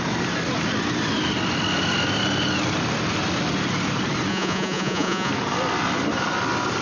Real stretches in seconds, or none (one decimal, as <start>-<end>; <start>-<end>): 0.0-4.3; 5.3-6.8